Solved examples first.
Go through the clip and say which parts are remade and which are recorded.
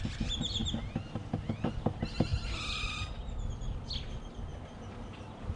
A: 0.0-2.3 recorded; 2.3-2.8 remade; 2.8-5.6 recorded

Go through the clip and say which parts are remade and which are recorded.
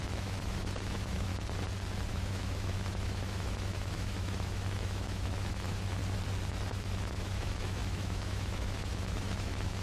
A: 0.0-1.3 remade; 1.3-2.1 recorded; 2.1-6.0 remade; 6.0-6.7 recorded; 6.7-9.8 remade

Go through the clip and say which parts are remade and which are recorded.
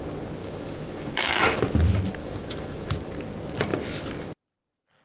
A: 0.0-0.4 recorded; 0.4-1.6 remade; 1.6-2.2 recorded; 2.2-2.9 remade; 2.9-5.0 recorded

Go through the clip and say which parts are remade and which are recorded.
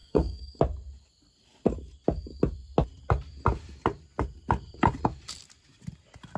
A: 0.0-0.6 remade; 0.6-6.4 recorded